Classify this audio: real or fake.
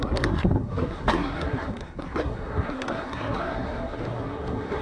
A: fake